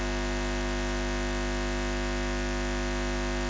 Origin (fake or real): real